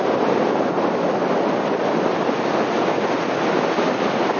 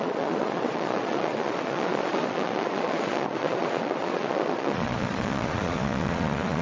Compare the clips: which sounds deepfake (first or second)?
second